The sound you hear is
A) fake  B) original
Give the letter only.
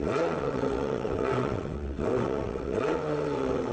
A